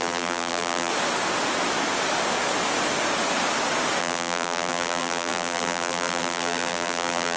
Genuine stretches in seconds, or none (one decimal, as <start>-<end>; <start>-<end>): 0.9-4.0